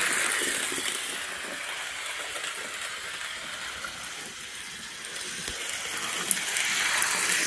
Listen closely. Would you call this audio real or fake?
real